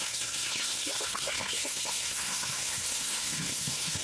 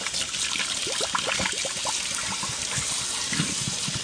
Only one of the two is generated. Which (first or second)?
first